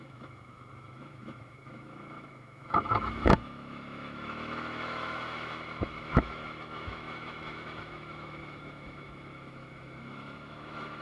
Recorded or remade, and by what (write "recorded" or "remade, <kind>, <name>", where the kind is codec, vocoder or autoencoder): remade, autoencoder, DAC-VAE